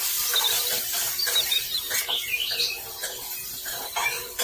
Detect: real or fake fake